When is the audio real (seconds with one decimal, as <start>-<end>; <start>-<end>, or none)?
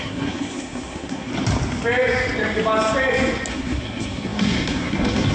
1.3-3.5